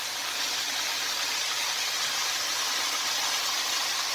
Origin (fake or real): real